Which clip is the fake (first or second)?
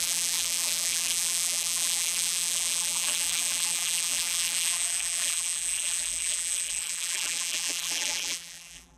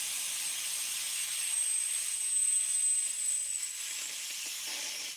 first